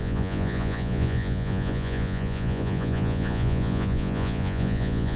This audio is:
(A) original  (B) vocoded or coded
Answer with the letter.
B